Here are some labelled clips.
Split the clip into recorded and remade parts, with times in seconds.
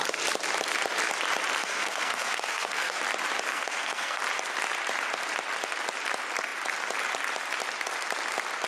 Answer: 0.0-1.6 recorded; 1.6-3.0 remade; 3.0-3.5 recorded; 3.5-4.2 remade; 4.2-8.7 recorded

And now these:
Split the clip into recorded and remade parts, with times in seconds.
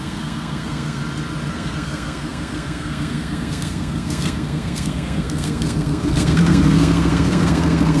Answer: 0.0-1.0 remade; 1.0-1.5 recorded; 1.5-8.0 remade